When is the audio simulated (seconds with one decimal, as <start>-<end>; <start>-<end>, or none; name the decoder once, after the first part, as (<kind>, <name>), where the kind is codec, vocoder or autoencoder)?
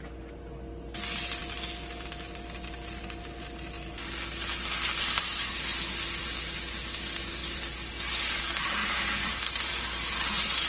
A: 8.8-9.8 (vocoder, BigVGAN v2)